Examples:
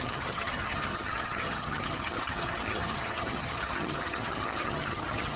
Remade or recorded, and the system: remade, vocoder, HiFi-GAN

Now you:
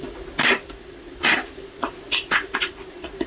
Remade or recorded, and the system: recorded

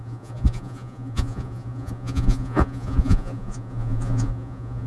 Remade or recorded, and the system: remade, vocoder, Vocos